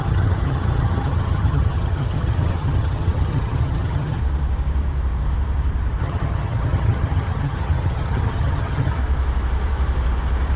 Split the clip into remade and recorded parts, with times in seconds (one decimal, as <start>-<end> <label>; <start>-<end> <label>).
0.0-4.2 remade; 4.2-6.0 recorded; 6.0-9.0 remade; 9.0-10.6 recorded